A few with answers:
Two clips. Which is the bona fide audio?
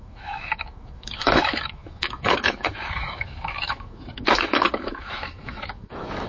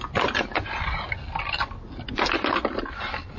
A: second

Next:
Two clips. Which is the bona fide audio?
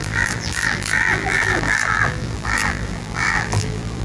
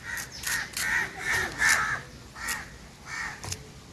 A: second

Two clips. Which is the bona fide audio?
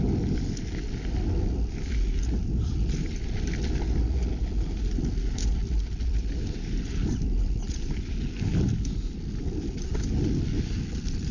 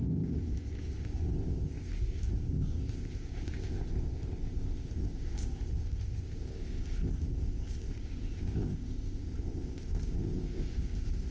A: first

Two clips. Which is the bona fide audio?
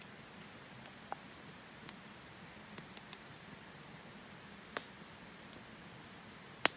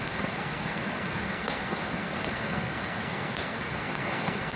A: first